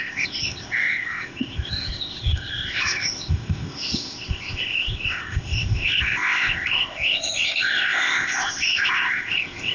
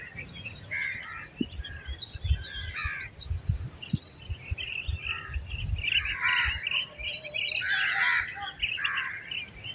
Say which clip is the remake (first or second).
first